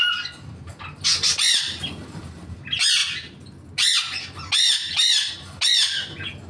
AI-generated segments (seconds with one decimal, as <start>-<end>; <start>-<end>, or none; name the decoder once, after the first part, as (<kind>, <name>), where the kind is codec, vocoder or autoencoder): none